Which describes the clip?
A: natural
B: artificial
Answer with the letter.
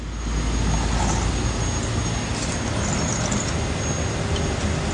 A